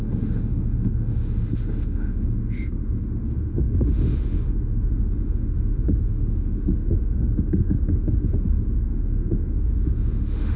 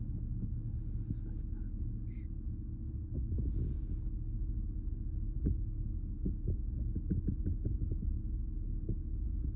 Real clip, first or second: second